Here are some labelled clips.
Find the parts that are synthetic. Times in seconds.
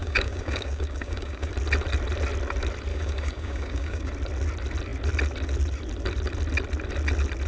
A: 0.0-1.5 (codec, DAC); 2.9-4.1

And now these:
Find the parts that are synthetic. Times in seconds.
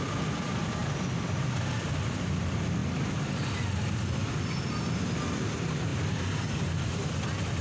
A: none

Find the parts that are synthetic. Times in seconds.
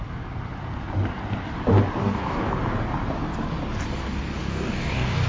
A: 2.0-2.5 (codec, DAC); 4.4-5.3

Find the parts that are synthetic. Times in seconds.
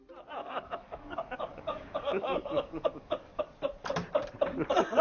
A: 0.4-3.4 (codec, DAC)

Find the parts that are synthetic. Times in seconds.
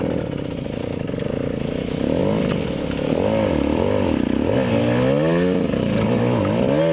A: none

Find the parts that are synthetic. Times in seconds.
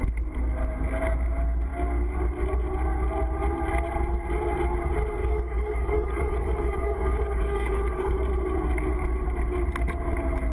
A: 5.2-8.3 (codec, DAC)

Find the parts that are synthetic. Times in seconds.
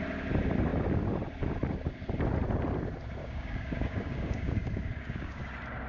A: 3.2-5.4 (codec, DAC)